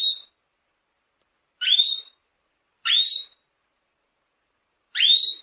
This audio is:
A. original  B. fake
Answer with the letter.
A